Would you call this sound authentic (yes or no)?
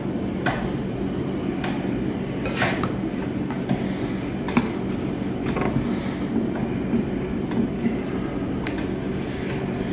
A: yes